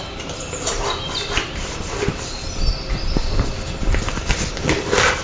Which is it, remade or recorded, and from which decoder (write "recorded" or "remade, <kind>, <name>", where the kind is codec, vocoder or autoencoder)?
recorded